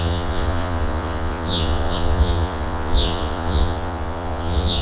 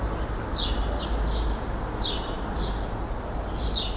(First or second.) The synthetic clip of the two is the first